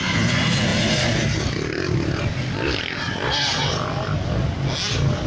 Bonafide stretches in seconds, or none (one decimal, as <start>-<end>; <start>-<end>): 0.0-5.3